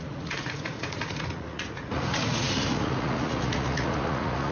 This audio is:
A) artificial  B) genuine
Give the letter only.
A